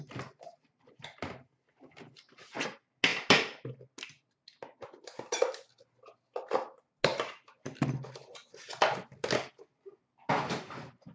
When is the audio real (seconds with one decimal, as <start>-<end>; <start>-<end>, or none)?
0.0-11.1